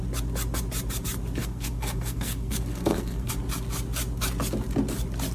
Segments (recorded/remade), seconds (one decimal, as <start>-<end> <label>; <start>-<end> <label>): 0.0-1.4 recorded; 1.4-3.3 remade; 3.3-5.3 recorded